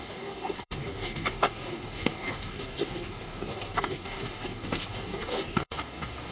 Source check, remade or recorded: remade